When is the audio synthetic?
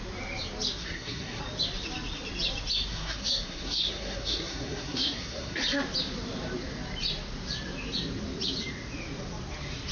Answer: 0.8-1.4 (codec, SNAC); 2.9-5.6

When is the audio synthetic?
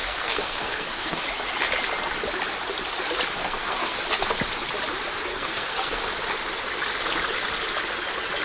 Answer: 0.0-1.2 (codec, SNAC); 3.4-4.0; 5.3-6.0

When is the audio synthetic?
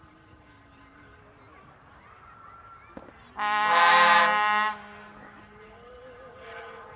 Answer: 0.0-1.2 (codec, HILCodec); 5.4-7.0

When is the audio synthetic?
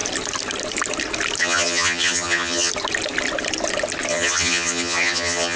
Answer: 1.4-2.7 (vocoder, HiFi-GAN); 4.1-5.6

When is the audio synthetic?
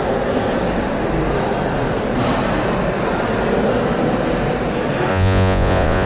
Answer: 5.1-6.1 (vocoder, Vocos)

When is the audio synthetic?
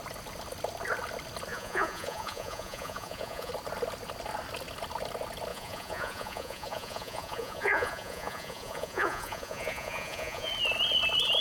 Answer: 1.5-3.5 (vocoder, Vocos); 5.5-10.5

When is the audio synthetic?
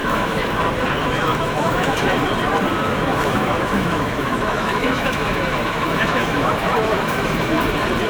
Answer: 0.0-0.6 (autoencoder, DAC-VAE); 1.0-2.1; 2.7-7.6